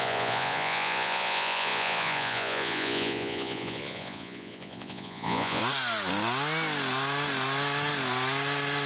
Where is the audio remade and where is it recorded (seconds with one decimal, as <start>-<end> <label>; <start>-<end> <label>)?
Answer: 0.0-5.6 remade; 5.6-8.9 recorded